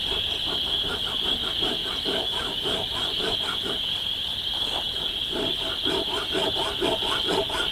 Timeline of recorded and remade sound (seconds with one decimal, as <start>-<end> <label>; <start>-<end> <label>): 0.0-1.8 recorded; 1.8-2.4 remade; 2.4-3.2 recorded; 3.2-4.5 remade; 4.5-7.7 recorded